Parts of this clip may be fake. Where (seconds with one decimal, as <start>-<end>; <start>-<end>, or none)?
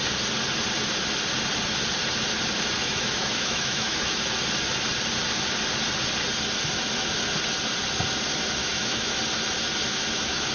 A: 2.8-4.3; 8.6-9.2; 9.9-10.5